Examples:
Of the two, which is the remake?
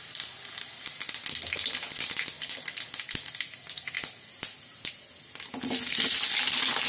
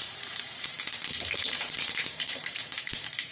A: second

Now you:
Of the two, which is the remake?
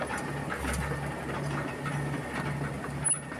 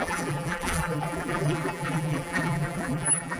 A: second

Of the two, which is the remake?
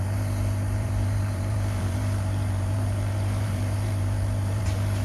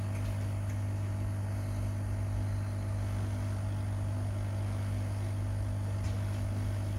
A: first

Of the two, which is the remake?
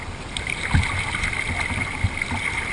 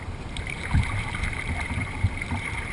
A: second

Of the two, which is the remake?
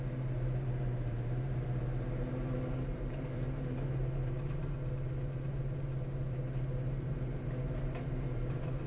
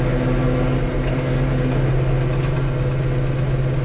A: first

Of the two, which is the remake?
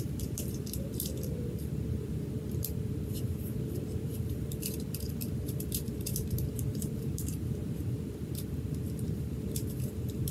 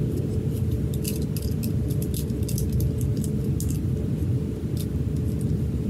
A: first